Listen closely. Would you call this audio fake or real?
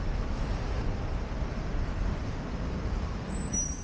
fake